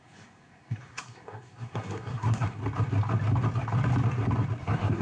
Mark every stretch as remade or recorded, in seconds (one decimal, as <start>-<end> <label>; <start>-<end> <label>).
0.0-2.6 remade; 2.6-4.6 recorded; 4.6-5.0 remade